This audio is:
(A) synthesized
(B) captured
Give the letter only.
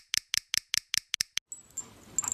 B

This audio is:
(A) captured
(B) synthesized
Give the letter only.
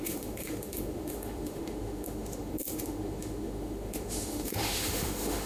B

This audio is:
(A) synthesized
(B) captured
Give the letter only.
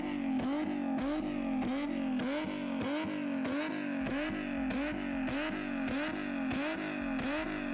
B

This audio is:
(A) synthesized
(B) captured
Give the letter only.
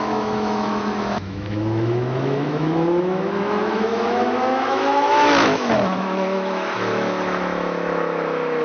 A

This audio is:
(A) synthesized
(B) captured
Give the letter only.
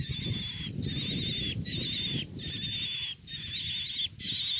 B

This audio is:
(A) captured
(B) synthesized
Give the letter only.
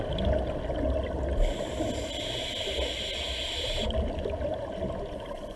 A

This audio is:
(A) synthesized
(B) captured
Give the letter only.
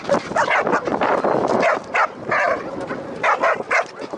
B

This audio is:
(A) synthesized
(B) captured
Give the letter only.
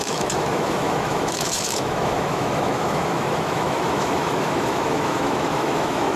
A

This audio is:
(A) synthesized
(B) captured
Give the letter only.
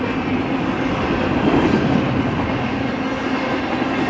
B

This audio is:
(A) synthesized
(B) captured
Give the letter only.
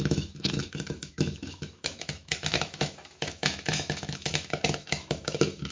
A